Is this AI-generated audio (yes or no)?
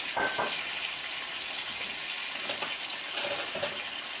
no